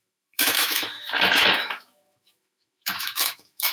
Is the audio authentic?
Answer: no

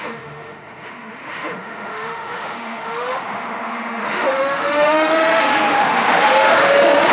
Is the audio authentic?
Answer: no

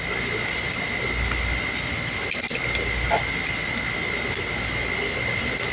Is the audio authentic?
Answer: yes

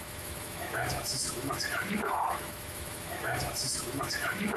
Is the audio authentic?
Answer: no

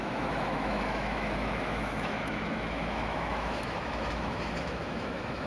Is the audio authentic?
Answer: no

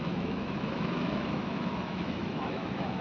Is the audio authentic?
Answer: no